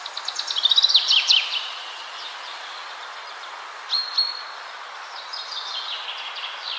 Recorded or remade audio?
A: recorded